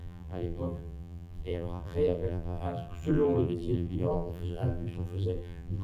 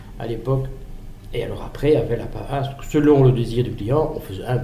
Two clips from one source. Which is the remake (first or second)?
first